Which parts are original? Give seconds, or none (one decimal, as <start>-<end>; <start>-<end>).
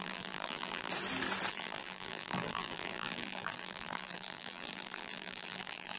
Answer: 0.9-1.5